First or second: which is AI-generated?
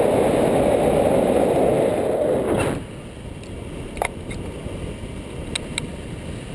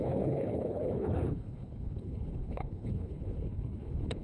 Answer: second